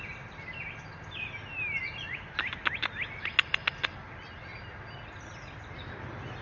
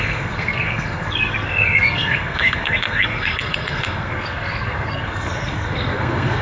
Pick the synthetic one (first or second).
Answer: second